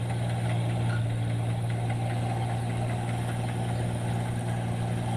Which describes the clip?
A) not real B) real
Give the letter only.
B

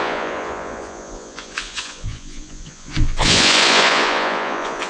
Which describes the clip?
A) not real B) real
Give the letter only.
A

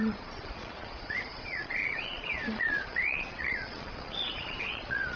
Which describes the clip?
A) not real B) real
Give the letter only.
A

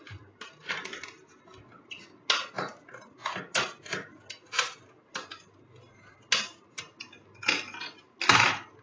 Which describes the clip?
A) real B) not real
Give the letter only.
A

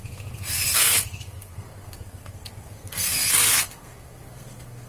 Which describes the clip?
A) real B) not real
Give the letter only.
B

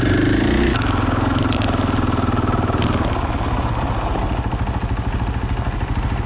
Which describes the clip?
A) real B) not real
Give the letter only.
A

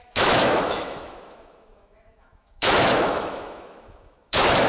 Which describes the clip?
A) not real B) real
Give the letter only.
A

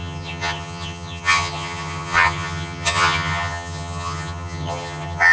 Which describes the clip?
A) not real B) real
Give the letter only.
A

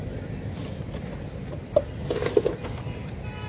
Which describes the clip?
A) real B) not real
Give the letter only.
A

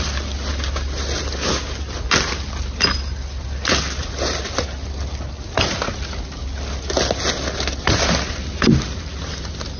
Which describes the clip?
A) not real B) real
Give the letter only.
B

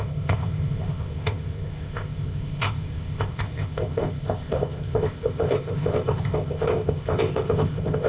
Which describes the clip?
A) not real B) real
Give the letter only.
A